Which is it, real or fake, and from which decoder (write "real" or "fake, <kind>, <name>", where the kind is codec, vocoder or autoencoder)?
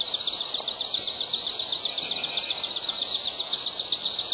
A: real